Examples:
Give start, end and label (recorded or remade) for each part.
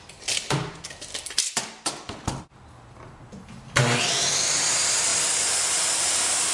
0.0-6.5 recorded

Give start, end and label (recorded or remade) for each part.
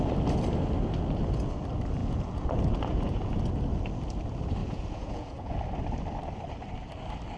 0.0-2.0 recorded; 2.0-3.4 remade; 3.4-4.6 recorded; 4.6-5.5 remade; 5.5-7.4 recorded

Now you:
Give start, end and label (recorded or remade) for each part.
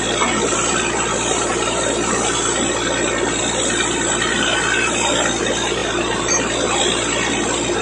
0.0-5.8 recorded; 5.8-6.3 remade; 6.3-7.8 recorded